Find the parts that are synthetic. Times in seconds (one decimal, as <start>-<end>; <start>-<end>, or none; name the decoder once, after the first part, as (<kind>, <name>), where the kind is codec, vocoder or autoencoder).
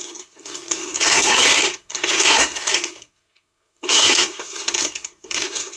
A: 0.0-5.8 (codec, SNAC)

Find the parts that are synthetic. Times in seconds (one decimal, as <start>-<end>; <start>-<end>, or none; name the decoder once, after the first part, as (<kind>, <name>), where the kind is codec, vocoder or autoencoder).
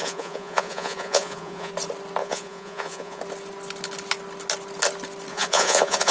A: 0.0-1.7 (vocoder, Vocos); 2.2-3.2; 5.3-6.1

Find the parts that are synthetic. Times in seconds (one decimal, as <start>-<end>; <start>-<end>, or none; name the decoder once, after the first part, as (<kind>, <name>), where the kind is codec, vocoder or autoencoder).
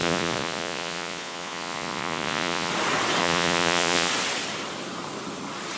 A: 0.0-2.7 (vocoder, Vocos); 3.2-4.1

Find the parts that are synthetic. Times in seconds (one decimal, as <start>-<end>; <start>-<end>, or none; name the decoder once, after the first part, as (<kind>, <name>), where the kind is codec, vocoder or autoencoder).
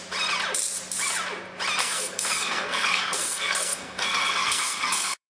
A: 1.8-5.3 (codec, SNAC)